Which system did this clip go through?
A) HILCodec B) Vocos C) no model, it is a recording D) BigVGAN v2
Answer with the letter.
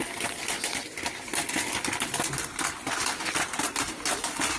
C